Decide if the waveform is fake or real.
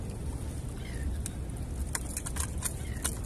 real